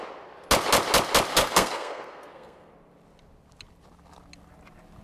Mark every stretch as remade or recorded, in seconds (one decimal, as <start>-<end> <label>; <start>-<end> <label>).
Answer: 0.0-1.3 recorded; 1.3-2.7 remade; 2.7-5.0 recorded